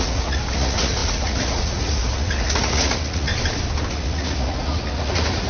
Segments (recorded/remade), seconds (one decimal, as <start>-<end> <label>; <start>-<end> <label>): 0.0-3.3 remade; 3.3-3.9 recorded; 3.9-5.5 remade